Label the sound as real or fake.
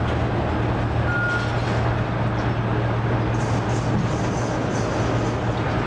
real